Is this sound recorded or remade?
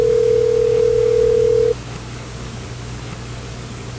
remade